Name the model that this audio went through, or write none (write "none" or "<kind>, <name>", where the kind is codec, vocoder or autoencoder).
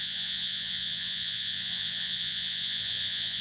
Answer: vocoder, Vocos